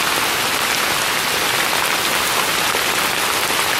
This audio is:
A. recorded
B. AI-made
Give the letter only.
A